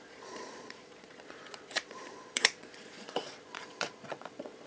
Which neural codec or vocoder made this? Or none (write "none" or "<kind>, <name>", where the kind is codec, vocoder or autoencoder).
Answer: vocoder, Vocos